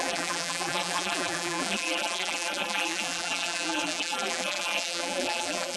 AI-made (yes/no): yes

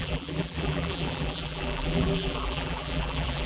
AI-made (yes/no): yes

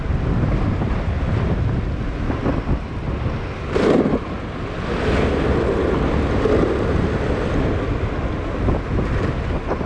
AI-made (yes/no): no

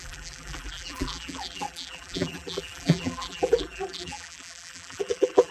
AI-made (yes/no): yes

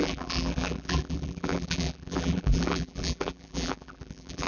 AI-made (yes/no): yes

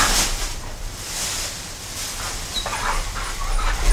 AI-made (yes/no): yes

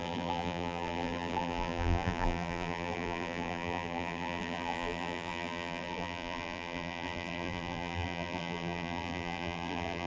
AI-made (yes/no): yes